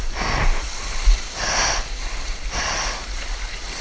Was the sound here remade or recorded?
recorded